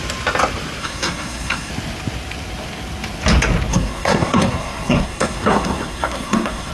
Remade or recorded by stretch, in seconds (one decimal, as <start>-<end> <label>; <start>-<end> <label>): 0.0-0.8 recorded; 0.8-1.7 remade; 1.7-3.7 recorded; 3.7-6.7 remade